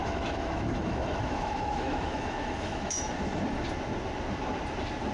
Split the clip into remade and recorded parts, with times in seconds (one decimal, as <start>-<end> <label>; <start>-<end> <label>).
0.0-3.1 remade; 3.1-5.1 recorded